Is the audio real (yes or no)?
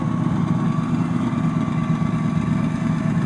yes